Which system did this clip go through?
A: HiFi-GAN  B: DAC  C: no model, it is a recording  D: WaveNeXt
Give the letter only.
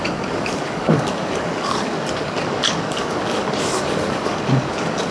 B